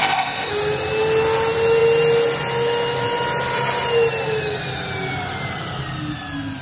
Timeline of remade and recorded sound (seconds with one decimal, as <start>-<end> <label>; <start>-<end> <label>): 0.0-0.5 remade; 0.5-6.6 recorded